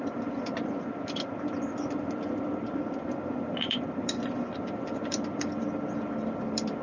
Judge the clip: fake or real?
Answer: fake